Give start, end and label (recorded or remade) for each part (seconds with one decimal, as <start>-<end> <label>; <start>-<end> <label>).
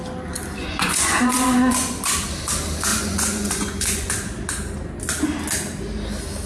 0.0-0.6 recorded; 0.6-1.8 remade; 1.8-2.9 recorded; 2.9-4.1 remade; 4.1-6.5 recorded